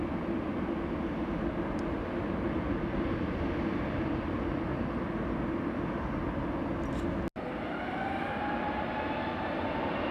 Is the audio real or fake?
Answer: real